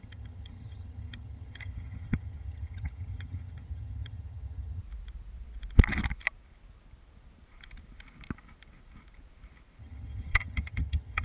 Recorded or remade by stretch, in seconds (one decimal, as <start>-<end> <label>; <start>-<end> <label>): 0.0-4.8 remade; 4.8-9.8 recorded; 9.8-11.2 remade

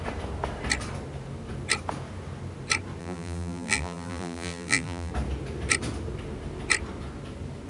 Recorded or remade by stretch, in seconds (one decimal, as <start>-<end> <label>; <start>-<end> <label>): 0.0-3.0 recorded; 3.0-5.1 remade; 5.1-7.7 recorded